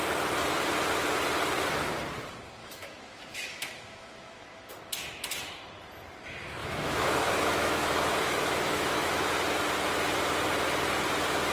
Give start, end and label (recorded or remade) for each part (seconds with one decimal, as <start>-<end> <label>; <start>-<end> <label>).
0.0-2.6 recorded; 2.6-4.7 remade; 4.7-6.6 recorded; 6.6-9.3 remade; 9.3-11.5 recorded